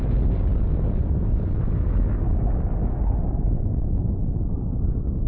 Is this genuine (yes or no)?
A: yes